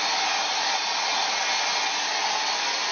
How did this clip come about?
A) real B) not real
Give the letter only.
A